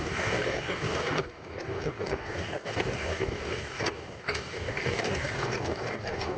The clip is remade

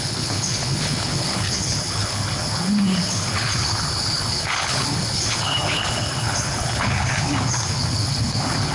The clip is remade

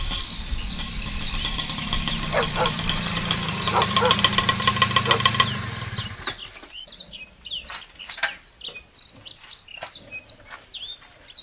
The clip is recorded